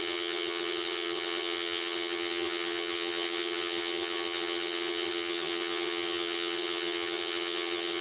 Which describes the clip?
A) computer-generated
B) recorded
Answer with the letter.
A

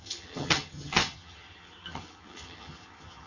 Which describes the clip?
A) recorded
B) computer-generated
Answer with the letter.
B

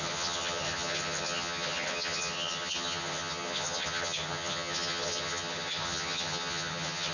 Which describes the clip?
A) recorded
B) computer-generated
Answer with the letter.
B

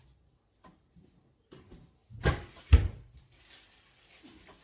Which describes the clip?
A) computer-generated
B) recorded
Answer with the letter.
B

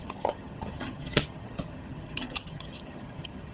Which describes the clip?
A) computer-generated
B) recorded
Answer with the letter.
A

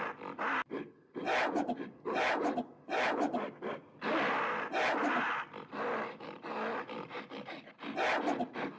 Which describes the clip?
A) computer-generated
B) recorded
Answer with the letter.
B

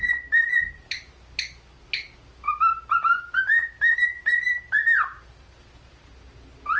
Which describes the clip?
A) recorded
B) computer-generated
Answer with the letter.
A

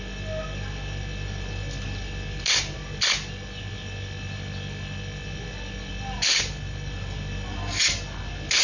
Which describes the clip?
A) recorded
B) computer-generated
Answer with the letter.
A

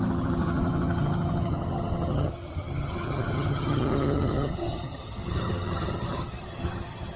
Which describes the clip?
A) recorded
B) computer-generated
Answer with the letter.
B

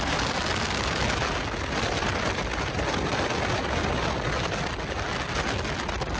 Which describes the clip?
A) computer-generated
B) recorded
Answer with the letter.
B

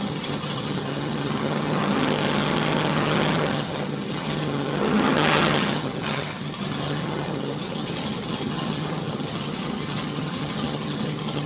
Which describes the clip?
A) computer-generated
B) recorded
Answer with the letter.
A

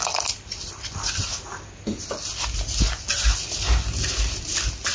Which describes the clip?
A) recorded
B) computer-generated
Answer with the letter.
A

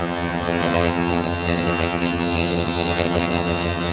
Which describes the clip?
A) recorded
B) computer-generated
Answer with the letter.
B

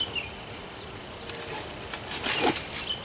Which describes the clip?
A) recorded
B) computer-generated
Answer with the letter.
A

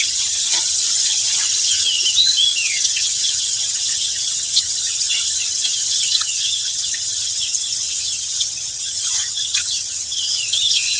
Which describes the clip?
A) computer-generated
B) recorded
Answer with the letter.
A